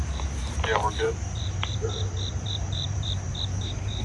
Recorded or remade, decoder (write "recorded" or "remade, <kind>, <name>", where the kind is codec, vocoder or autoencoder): remade, vocoder, BigVGAN v2